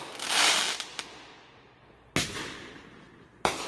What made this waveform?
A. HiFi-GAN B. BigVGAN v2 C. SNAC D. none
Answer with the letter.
D